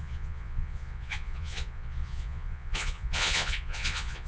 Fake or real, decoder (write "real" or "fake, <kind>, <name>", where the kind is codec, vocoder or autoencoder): fake, vocoder, Vocos